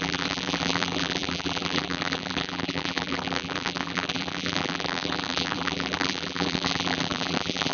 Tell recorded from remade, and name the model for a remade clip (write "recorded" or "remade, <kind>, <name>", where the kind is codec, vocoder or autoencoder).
remade, vocoder, BigVGAN v2